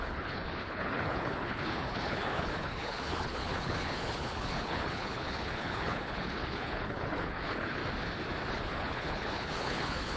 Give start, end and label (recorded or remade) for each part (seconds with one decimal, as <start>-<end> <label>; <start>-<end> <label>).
0.0-7.8 remade; 7.8-8.5 recorded; 8.5-10.2 remade